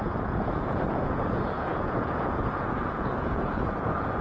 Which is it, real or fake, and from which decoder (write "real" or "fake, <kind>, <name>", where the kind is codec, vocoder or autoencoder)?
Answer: fake, vocoder, Vocos